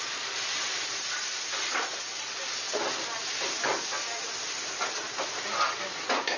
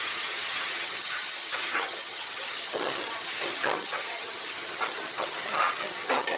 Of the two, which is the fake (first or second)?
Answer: second